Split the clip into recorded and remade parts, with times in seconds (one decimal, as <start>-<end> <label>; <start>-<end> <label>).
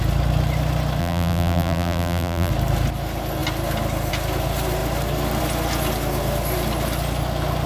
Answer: 0.0-1.0 recorded; 1.0-2.5 remade; 2.5-7.7 recorded